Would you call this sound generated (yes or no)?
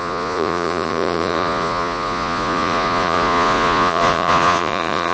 yes